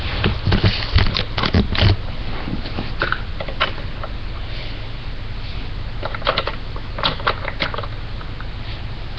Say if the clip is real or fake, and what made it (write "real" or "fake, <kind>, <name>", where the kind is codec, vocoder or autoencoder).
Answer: real